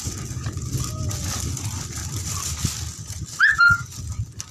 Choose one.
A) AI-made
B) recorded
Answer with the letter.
B